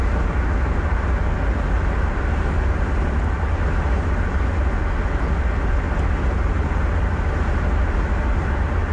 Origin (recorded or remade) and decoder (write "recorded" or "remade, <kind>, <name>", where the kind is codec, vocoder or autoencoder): recorded